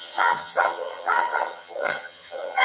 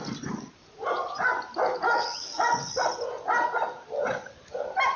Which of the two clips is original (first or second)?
second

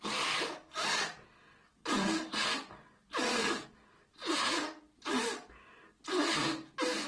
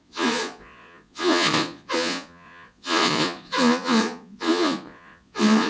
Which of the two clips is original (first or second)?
first